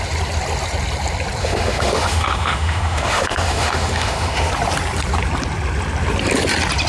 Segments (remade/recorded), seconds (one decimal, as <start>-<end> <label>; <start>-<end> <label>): 0.0-1.4 recorded; 1.4-4.5 remade; 4.5-6.9 recorded